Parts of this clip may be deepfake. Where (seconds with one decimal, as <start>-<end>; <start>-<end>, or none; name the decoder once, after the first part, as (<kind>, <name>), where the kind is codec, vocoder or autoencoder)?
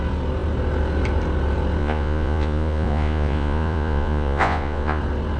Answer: 1.8-5.0 (vocoder, Vocos)